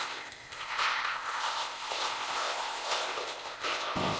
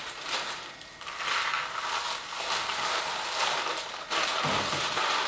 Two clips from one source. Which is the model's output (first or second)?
first